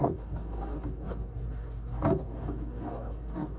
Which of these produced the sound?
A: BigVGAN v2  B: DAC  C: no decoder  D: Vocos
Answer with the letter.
B